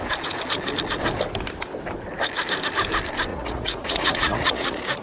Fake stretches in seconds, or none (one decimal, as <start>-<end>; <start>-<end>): 3.3-5.0